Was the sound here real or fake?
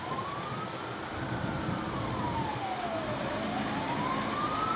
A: real